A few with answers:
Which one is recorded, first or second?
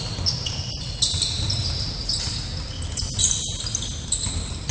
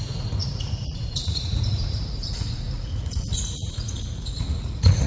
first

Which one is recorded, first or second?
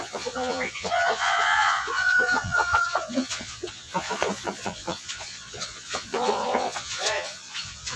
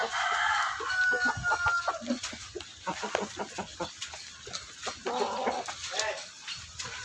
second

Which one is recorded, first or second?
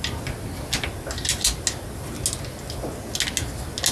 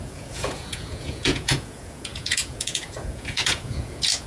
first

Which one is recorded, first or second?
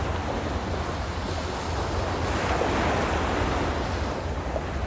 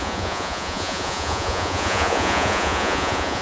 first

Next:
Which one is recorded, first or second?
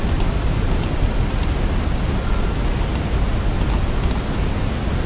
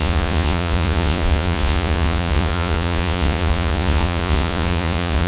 first